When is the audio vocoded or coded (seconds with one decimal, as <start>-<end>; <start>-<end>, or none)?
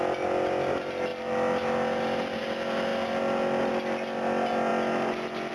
none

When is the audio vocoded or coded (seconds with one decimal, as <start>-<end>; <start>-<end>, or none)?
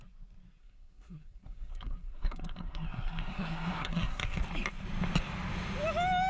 0.6-4.4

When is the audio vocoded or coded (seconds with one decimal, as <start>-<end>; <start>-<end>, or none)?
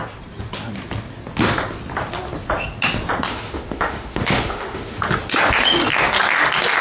3.3-5.0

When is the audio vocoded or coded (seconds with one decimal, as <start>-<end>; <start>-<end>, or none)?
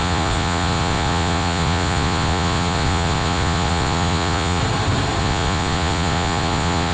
0.0-4.6; 5.2-6.9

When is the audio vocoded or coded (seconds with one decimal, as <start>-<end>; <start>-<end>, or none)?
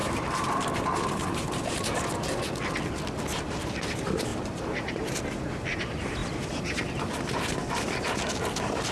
0.0-1.8; 4.3-5.2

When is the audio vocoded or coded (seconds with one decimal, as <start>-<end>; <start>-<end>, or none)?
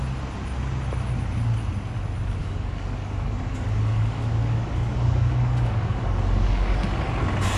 2.4-7.0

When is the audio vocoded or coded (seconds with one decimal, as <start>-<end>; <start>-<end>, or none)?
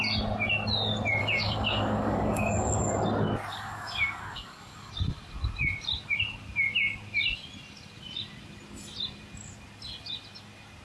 1.2-2.8; 3.5-4.9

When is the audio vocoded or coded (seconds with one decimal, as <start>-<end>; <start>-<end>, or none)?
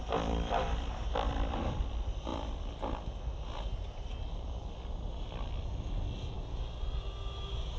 none